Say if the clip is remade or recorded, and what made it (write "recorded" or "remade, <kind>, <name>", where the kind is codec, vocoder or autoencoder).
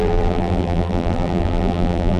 remade, vocoder, BigVGAN v2